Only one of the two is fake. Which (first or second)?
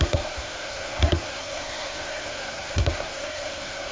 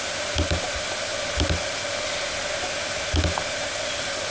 first